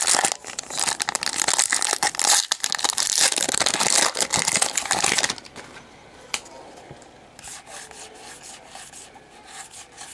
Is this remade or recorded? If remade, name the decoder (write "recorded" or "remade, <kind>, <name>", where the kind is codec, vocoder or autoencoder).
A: recorded